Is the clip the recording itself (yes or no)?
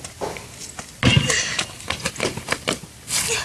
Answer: yes